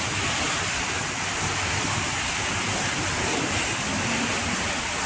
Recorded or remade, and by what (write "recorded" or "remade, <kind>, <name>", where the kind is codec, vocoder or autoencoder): remade, vocoder, BigVGAN v2